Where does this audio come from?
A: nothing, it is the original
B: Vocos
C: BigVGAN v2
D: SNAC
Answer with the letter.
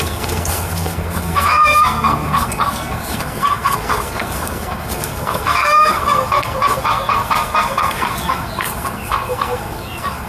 D